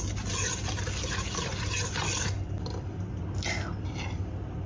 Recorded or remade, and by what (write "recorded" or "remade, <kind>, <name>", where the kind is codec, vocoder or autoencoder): recorded